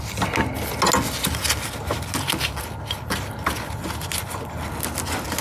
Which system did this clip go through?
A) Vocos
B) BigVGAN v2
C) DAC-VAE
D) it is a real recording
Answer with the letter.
D